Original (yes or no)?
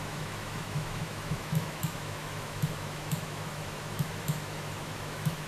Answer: no